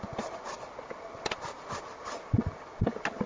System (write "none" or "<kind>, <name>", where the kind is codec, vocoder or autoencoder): none